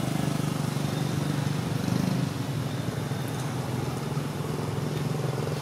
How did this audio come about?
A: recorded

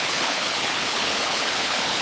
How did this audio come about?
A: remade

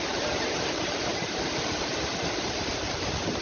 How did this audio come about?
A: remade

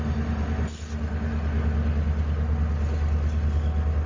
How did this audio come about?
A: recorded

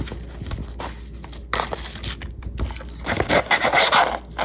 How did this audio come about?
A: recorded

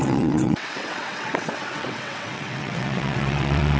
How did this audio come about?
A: remade